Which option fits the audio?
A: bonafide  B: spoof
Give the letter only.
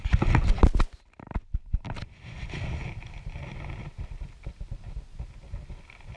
A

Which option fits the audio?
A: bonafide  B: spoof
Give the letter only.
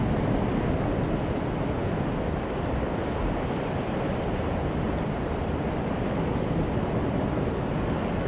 A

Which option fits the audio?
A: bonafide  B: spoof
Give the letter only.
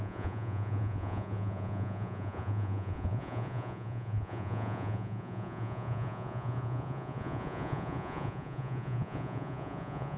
B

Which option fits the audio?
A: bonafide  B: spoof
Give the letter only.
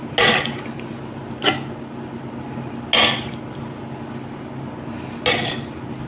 A